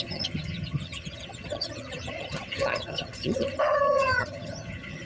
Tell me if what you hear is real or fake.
fake